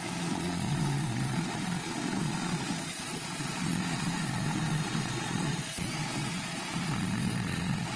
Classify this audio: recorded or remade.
remade